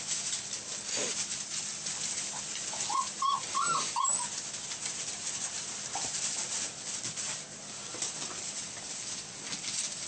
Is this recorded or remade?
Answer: recorded